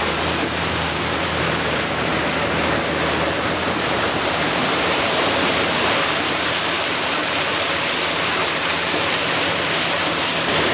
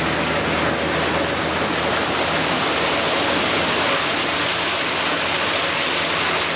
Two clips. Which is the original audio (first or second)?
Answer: second